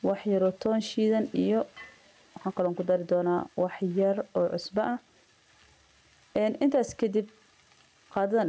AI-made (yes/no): no